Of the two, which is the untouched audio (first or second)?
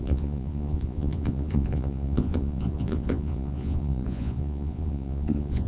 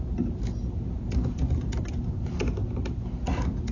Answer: second